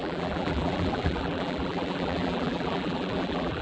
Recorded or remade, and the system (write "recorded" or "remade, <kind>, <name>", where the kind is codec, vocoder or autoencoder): remade, vocoder, BigVGAN v2